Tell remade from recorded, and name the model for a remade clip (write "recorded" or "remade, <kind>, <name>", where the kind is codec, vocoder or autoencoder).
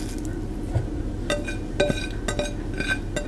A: recorded